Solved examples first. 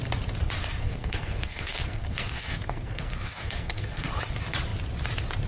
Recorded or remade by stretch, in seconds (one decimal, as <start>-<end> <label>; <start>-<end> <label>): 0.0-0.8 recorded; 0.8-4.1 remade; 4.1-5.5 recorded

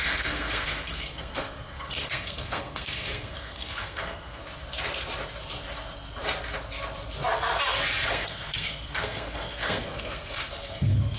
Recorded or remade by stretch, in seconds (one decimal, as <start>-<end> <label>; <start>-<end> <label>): 0.0-4.4 remade; 4.4-8.1 recorded; 8.1-11.2 remade

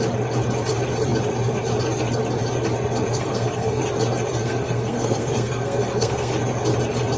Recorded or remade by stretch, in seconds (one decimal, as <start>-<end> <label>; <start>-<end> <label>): 0.0-3.1 recorded; 3.1-3.8 remade; 3.8-4.4 recorded; 4.4-6.3 remade; 6.3-7.2 recorded

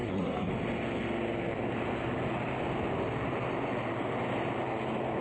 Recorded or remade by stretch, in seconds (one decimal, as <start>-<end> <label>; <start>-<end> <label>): 0.0-0.5 remade; 0.5-5.2 recorded

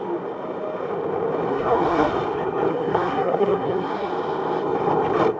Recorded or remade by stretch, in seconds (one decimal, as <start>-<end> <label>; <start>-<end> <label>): 0.0-1.5 recorded; 1.5-2.1 remade; 2.1-2.7 recorded; 2.7-4.1 remade; 4.1-5.4 recorded

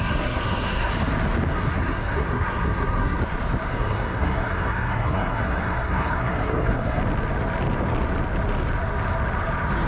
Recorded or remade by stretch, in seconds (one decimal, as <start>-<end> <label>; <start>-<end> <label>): 0.0-0.9 remade; 0.9-1.5 recorded; 1.5-3.2 remade; 3.2-3.7 recorded; 3.7-7.0 remade; 7.0-9.9 recorded

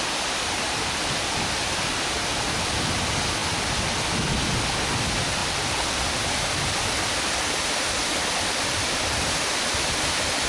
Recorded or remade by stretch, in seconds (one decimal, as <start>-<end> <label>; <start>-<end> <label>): 0.0-10.5 recorded